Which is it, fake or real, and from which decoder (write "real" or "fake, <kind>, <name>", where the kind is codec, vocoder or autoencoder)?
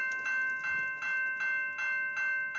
real